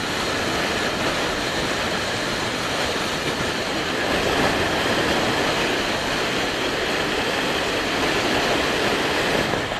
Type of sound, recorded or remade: recorded